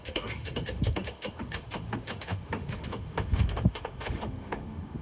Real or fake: fake